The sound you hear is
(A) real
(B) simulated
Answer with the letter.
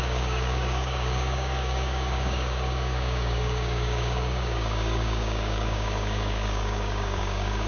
B